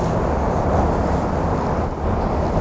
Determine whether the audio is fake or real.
real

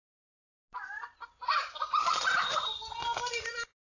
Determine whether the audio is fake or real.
real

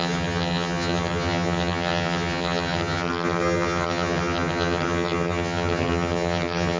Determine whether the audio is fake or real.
fake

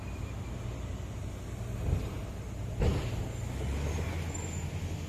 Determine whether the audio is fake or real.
real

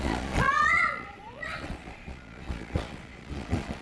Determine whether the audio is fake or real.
fake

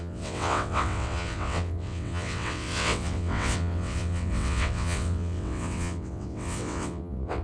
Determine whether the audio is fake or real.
fake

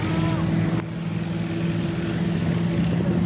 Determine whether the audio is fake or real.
real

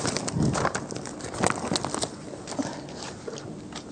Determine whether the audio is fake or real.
real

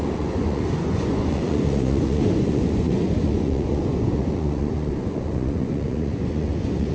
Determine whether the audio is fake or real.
fake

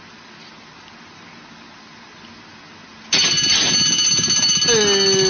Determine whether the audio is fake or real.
real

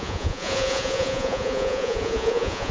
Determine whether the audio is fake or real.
fake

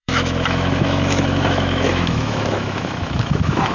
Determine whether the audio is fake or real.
fake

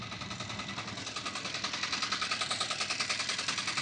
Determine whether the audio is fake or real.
real